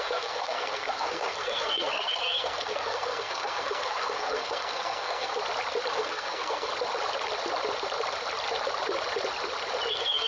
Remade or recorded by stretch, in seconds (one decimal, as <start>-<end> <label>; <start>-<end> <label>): 0.0-5.3 remade; 5.3-5.9 recorded; 5.9-6.7 remade; 6.7-9.9 recorded; 9.9-10.3 remade